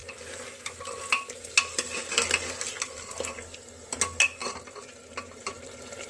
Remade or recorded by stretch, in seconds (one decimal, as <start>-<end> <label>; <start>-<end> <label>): 0.0-4.4 recorded; 4.4-6.1 remade